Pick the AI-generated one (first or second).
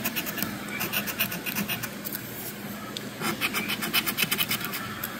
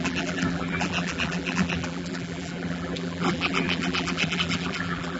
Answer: second